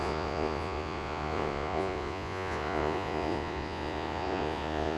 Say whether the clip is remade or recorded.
remade